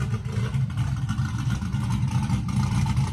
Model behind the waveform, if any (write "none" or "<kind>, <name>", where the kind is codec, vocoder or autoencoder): none